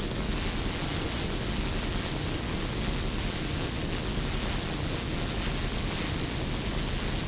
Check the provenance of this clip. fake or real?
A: real